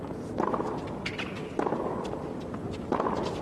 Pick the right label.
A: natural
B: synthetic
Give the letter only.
A